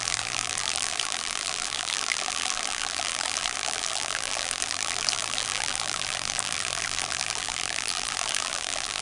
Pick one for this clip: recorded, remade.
remade